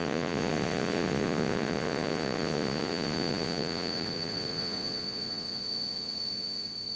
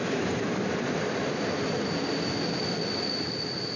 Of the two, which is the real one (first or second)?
second